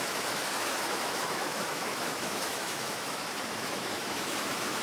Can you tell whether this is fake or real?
fake